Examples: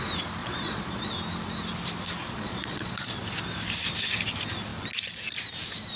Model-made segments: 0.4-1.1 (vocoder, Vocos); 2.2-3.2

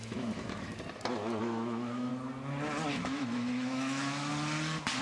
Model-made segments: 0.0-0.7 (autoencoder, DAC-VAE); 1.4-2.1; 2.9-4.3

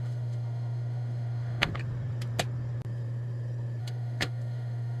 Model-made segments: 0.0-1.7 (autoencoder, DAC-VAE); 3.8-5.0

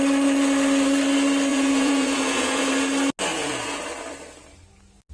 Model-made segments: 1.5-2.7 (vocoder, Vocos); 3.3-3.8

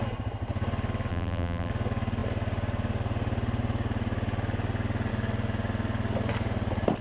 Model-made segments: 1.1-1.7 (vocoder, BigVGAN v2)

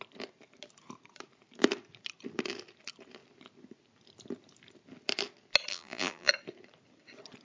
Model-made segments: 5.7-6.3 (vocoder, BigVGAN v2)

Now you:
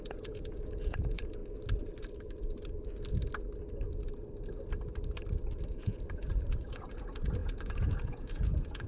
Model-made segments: 0.0-1.4 (vocoder, Vocos); 5.7-8.9

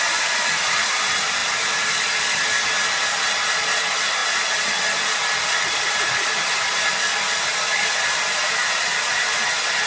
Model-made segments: none